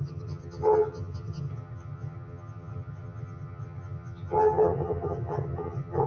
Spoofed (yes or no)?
yes